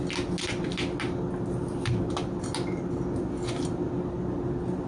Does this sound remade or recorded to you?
recorded